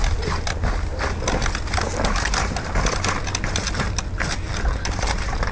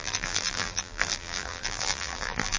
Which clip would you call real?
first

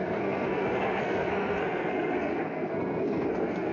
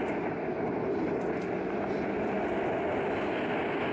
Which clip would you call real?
second